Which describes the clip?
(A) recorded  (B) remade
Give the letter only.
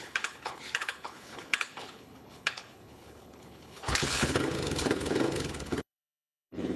B